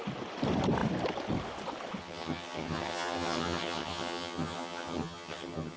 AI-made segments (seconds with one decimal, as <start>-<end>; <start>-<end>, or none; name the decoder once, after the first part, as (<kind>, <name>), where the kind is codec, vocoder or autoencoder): 2.0-5.8 (vocoder, HiFi-GAN)